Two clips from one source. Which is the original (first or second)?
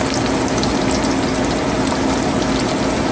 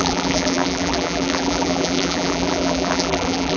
first